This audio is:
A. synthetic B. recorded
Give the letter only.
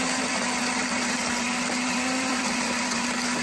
A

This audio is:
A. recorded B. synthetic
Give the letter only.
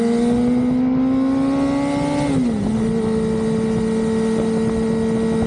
A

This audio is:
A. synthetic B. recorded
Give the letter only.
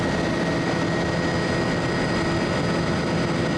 B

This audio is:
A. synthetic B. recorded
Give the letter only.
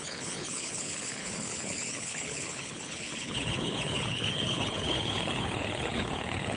A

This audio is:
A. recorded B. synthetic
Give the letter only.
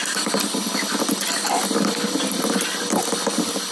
A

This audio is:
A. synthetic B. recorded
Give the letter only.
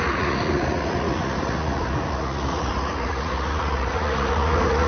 A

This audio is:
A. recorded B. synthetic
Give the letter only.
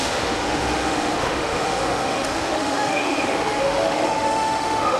B